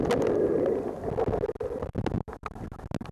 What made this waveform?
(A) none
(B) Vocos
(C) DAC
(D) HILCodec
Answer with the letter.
A